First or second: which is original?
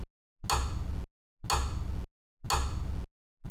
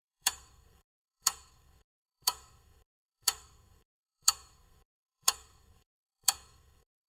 first